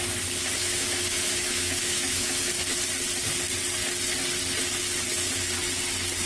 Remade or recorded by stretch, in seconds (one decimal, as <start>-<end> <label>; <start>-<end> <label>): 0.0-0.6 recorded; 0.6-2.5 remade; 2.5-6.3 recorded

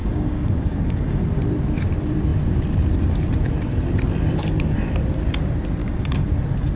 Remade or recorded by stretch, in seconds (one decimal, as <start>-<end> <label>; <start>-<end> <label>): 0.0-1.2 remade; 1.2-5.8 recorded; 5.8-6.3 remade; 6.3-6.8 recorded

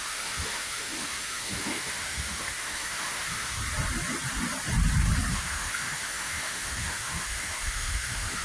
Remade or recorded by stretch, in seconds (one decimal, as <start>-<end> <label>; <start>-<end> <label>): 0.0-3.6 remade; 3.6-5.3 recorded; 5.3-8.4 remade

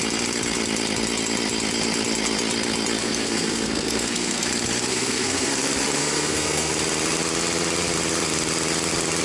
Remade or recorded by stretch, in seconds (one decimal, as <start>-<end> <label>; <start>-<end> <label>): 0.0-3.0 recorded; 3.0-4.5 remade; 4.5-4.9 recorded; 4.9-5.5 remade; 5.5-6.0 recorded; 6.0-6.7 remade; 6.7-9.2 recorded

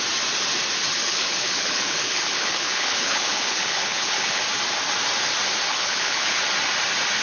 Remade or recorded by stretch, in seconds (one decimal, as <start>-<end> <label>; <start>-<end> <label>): 0.0-0.9 recorded; 0.9-4.4 remade; 4.4-5.7 recorded; 5.7-6.4 remade; 6.4-7.2 recorded

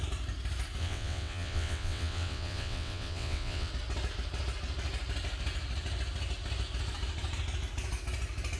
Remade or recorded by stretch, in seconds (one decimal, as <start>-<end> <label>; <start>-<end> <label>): 0.0-0.8 recorded; 0.8-3.7 remade; 3.7-8.6 recorded

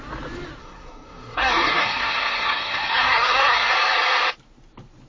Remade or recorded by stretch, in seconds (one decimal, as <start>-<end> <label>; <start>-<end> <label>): 0.0-0.6 recorded; 0.6-3.7 remade; 3.7-5.1 recorded

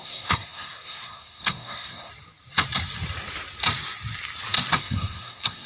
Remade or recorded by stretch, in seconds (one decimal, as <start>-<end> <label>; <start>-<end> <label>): 0.0-2.1 remade; 2.1-4.8 recorded; 4.8-5.7 remade